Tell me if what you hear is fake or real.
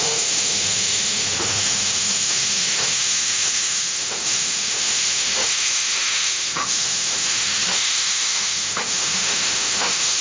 fake